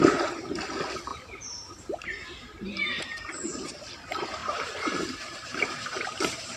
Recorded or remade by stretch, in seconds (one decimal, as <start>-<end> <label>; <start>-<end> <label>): 0.0-1.1 recorded; 1.1-3.7 remade; 3.7-4.4 recorded; 4.4-6.6 remade